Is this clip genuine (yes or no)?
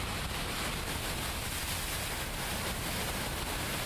yes